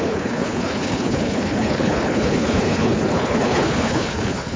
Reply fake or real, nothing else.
fake